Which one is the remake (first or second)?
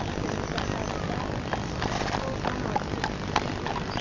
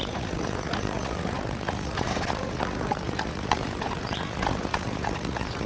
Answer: second